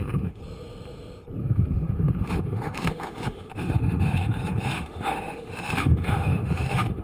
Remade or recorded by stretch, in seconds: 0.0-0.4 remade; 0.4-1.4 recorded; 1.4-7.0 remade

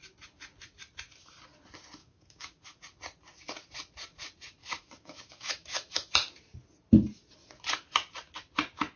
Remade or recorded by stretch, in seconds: 0.0-2.0 recorded; 2.0-2.8 remade; 2.8-4.6 recorded; 4.6-6.1 remade; 6.1-9.0 recorded